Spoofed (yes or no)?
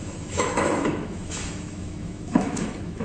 yes